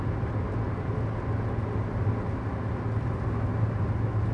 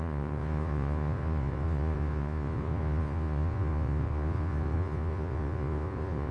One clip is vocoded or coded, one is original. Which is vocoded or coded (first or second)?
second